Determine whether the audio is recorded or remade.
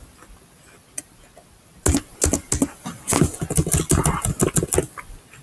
recorded